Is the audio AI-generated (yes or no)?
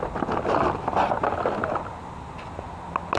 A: no